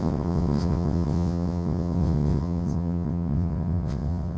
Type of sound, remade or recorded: remade